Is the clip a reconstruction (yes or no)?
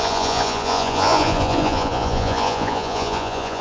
yes